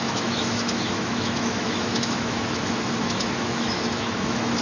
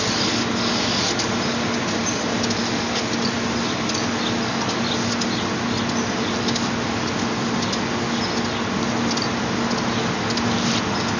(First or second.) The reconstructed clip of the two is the first